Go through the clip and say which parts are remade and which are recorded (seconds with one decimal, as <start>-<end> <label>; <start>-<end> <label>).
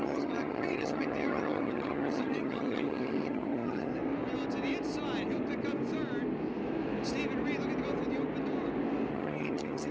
0.0-3.9 remade; 3.9-9.1 recorded; 9.1-9.9 remade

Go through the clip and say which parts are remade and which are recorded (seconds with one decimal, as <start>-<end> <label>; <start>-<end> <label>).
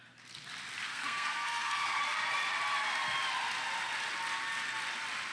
0.0-0.9 recorded; 0.9-2.0 remade; 2.0-5.3 recorded